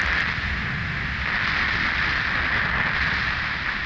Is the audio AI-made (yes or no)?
no